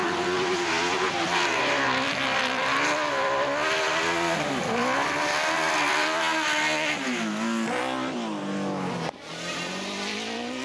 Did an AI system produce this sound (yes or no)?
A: no